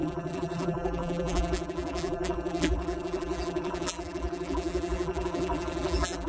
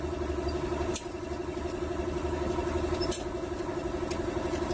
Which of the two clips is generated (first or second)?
first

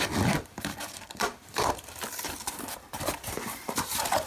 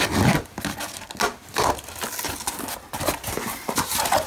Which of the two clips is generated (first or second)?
first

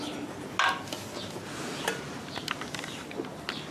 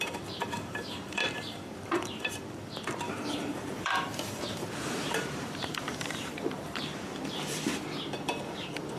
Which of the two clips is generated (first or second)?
second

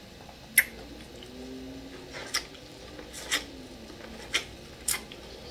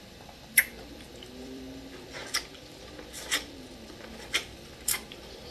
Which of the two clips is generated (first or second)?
second